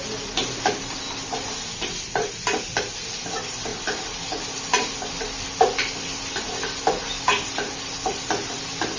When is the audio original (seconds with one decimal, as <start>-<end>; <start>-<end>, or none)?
0.0-9.0